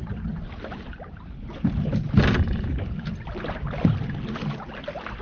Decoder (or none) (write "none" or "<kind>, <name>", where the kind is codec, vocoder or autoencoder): none